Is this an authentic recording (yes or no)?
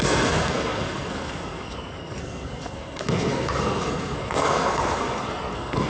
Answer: no